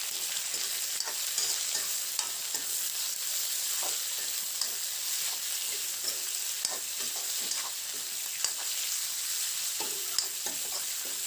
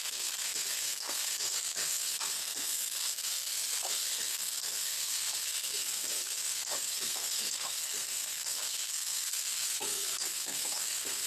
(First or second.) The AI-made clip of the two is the second